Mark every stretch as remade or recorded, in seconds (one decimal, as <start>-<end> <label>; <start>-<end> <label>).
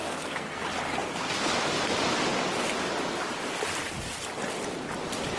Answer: 0.0-0.6 remade; 0.6-5.4 recorded